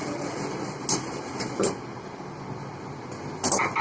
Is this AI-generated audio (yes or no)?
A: no